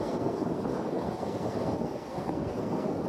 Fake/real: fake